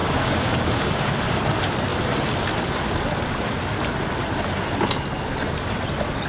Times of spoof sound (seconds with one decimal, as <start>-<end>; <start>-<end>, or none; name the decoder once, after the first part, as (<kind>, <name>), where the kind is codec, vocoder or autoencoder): 0.0-1.4 (codec, DAC)